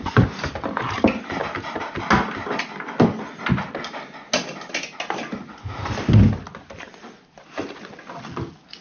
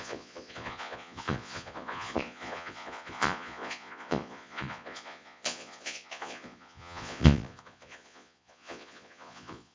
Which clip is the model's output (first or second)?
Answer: second